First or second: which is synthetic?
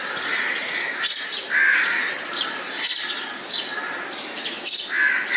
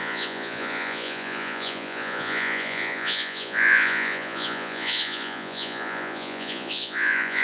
second